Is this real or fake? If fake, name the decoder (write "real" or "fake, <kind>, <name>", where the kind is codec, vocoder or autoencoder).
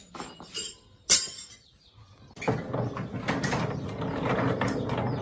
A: real